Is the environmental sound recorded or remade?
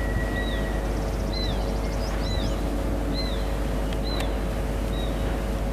recorded